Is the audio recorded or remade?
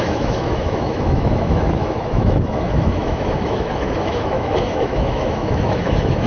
remade